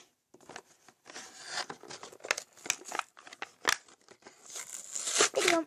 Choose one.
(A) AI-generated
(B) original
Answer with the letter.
B